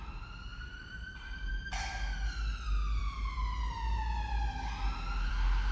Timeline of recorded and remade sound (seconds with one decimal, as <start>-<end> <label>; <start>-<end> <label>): 0.0-0.5 recorded; 0.5-1.5 remade; 1.5-5.7 recorded

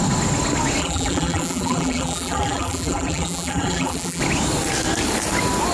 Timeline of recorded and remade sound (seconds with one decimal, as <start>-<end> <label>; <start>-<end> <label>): 0.0-0.8 recorded; 0.8-4.2 remade; 4.2-5.7 recorded

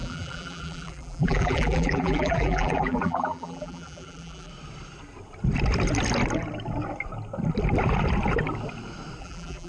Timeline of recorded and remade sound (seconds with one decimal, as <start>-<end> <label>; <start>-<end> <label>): 0.0-4.5 remade; 4.5-9.2 recorded; 9.2-9.7 remade